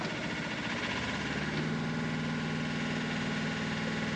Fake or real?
real